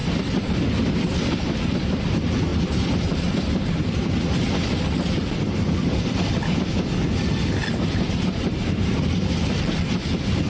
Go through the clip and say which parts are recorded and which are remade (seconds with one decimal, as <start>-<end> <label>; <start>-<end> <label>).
0.0-1.3 remade; 1.3-2.5 recorded; 2.5-6.4 remade; 6.4-7.6 recorded; 7.6-9.6 remade; 9.6-10.5 recorded